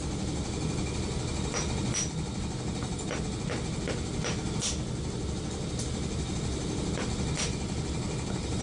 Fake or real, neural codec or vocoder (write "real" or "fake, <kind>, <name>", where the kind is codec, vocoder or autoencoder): real